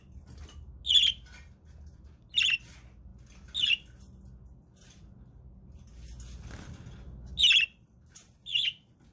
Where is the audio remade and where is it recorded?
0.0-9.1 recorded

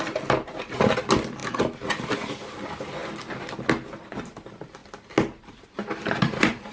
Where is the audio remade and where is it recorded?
0.0-6.7 recorded

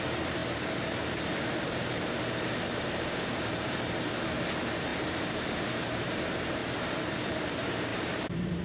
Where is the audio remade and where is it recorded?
0.0-6.6 remade; 6.6-7.3 recorded; 7.3-8.6 remade

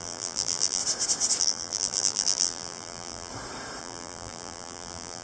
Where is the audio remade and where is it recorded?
0.0-0.8 remade; 0.8-1.4 recorded; 1.4-3.3 remade; 3.3-3.8 recorded; 3.8-5.2 remade

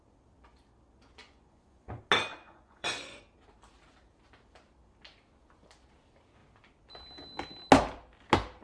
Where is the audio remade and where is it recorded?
0.0-1.2 recorded; 1.2-2.0 remade; 2.0-2.4 recorded; 2.4-3.2 remade; 3.2-8.6 recorded

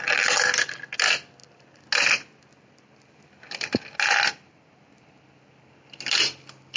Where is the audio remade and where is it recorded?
0.0-6.8 recorded

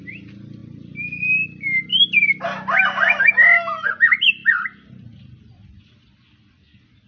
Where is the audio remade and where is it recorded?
0.0-7.1 recorded